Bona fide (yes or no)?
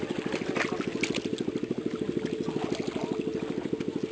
yes